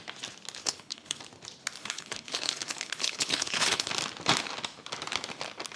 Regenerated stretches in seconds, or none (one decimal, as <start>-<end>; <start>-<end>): 0.6-1.2; 1.8-3.9